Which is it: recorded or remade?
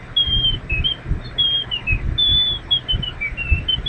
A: recorded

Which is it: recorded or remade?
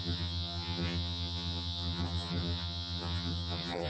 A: remade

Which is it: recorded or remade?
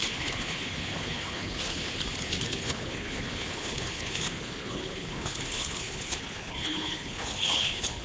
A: remade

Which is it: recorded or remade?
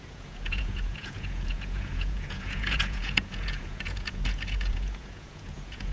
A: remade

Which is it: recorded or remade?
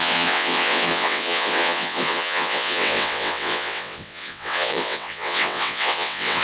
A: remade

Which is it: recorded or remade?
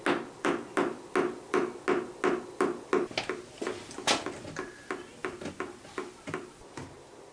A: recorded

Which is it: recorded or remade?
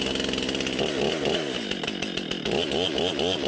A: recorded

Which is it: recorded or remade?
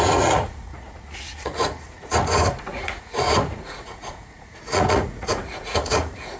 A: remade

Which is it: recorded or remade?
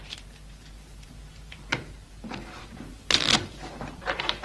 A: remade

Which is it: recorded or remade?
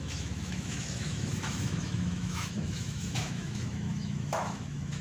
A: remade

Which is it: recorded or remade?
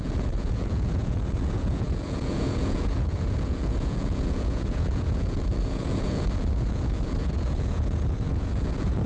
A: remade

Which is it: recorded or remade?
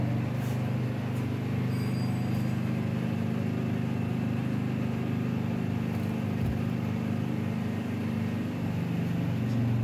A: recorded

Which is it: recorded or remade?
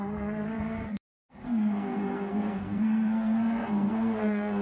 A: remade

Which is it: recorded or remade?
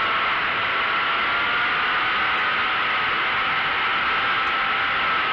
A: recorded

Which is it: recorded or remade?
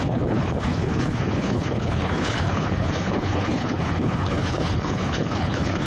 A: remade